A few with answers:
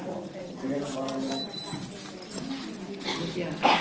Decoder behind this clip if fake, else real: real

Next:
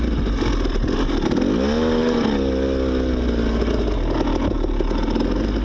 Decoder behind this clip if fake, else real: real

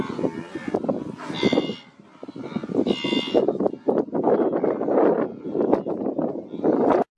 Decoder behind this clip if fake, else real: real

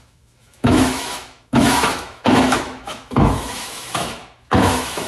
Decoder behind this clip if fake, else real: fake, autoencoder, DAC-VAE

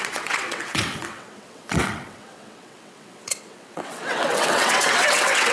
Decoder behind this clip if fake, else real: fake, vocoder, WaveNeXt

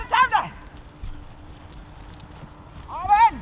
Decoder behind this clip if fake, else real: real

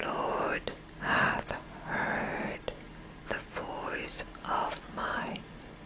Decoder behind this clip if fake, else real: real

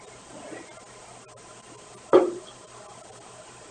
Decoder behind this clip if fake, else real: real